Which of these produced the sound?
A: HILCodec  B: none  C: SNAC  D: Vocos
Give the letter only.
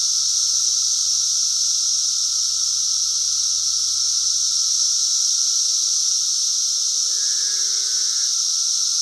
B